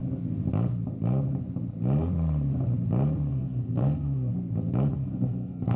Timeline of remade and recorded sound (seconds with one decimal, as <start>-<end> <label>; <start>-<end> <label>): 0.0-3.3 recorded; 3.3-4.3 remade; 4.3-4.9 recorded; 4.9-5.8 remade